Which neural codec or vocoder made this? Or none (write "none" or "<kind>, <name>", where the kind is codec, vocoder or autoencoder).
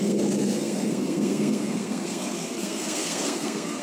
codec, SNAC